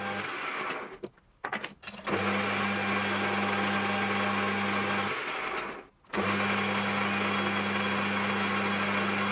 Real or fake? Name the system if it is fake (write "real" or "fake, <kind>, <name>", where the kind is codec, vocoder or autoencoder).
real